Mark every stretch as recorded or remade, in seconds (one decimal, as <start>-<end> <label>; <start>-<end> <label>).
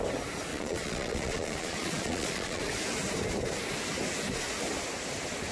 0.0-0.5 recorded; 0.5-2.6 remade; 2.6-5.5 recorded